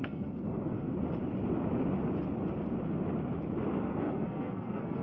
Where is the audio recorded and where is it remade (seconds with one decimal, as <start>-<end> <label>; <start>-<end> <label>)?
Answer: 0.0-0.9 remade; 0.9-3.8 recorded; 3.8-5.0 remade